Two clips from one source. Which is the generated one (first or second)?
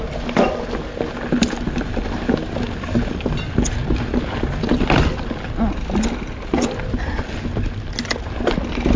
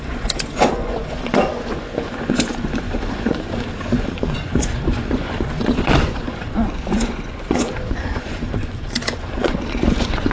second